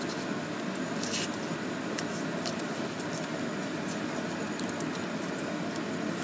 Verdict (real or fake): real